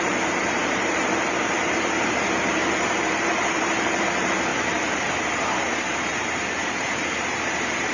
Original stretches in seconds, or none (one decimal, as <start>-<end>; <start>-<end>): 4.5-5.3